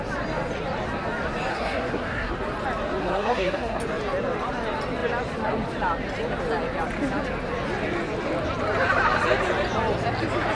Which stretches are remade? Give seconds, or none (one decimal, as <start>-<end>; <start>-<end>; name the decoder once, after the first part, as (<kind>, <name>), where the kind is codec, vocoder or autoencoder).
1.5-2.3 (codec, SNAC); 3.0-3.8

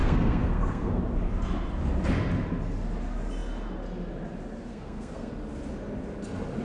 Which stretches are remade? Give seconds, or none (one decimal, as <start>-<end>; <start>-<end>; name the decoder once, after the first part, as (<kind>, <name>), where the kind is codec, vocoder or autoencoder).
0.0-1.0 (codec, SNAC); 4.7-5.3